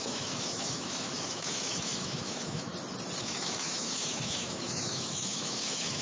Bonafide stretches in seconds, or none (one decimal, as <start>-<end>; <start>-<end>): 2.7-3.2